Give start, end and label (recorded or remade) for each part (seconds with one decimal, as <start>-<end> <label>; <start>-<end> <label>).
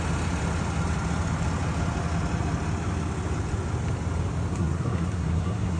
0.0-4.5 recorded; 4.5-5.8 remade